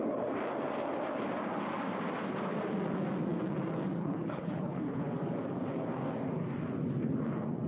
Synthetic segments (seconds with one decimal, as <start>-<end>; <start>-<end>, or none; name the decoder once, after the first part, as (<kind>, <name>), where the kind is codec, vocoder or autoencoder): 4.0-5.0 (codec, HILCodec)